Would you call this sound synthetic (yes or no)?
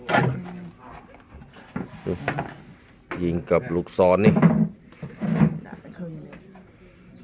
no